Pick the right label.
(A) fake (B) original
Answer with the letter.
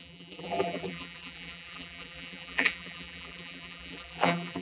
A